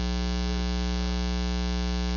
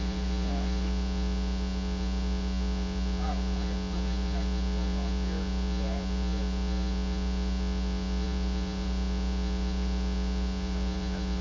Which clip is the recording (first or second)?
first